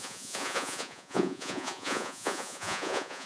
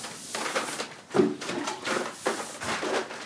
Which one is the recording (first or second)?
second